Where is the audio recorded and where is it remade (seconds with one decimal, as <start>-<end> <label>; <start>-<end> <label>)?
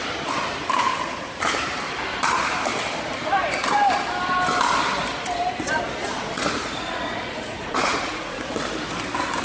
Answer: 0.0-0.9 recorded; 0.9-1.4 remade; 1.4-6.0 recorded; 6.0-8.4 remade; 8.4-9.4 recorded